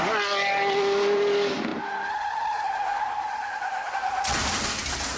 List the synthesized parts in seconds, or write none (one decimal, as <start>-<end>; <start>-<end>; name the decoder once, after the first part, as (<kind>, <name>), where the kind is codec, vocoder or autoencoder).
1.7-3.9 (vocoder, BigVGAN v2)